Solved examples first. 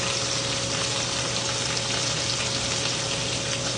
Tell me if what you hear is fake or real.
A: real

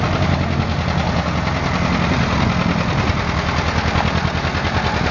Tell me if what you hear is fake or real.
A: real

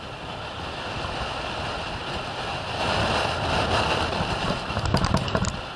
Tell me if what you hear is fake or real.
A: real